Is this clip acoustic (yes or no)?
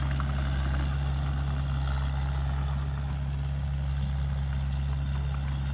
yes